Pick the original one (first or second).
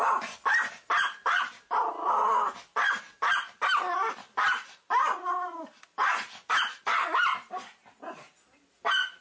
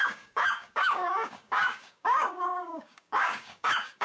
first